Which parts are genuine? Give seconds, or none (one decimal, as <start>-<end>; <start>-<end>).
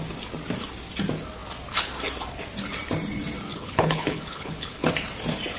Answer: 0.0-3.5; 4.9-5.6